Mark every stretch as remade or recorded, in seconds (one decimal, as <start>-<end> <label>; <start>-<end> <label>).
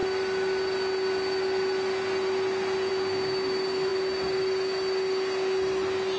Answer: 0.0-6.2 recorded